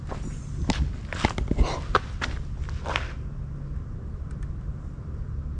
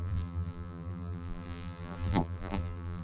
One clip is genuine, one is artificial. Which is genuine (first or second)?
first